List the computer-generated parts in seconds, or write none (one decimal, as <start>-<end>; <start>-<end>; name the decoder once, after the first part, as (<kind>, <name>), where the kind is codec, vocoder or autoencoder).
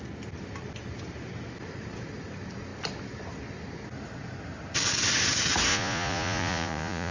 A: 5.7-7.1 (vocoder, Vocos)